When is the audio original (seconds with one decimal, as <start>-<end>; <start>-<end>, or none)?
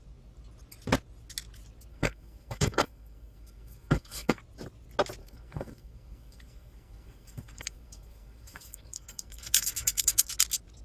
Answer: 0.0-1.9; 4.4-5.2; 10.3-10.8